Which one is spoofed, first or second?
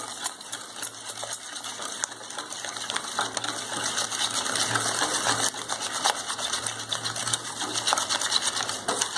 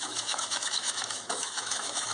second